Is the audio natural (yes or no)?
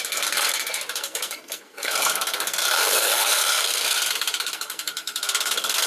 no